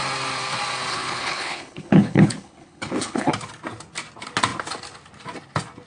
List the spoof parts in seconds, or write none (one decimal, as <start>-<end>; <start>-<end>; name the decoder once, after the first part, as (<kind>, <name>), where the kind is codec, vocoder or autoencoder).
0.9-3.3 (codec, HILCodec)